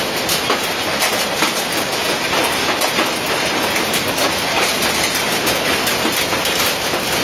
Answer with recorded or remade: recorded